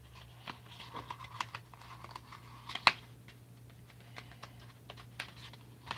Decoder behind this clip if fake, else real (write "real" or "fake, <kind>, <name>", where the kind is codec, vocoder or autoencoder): real